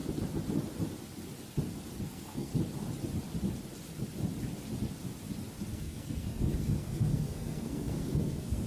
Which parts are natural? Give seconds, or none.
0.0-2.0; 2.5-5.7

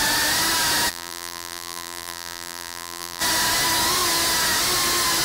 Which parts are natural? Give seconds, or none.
0.0-0.9; 3.2-5.2

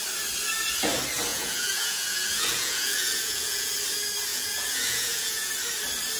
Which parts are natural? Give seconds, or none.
0.0-1.3; 3.7-4.3; 5.5-6.2